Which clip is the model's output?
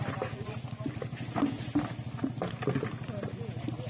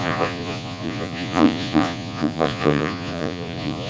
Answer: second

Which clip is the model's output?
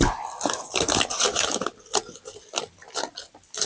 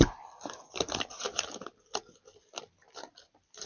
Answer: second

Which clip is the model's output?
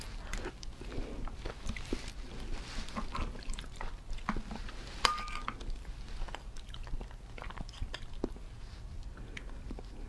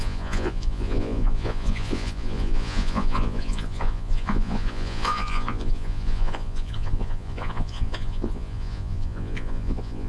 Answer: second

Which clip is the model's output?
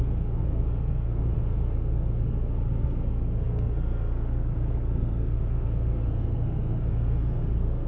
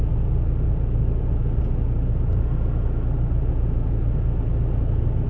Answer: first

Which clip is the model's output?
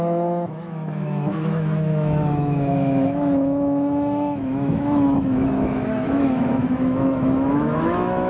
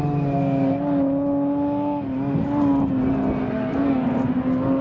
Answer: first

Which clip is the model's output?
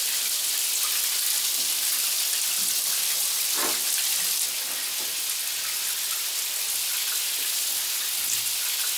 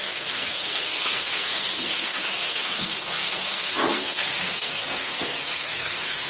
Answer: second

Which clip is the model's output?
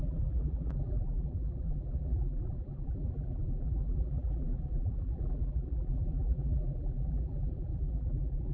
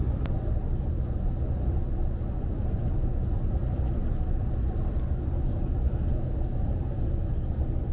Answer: first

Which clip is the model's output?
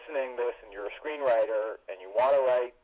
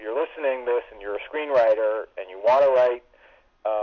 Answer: first